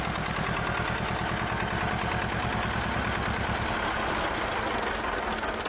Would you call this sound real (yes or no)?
yes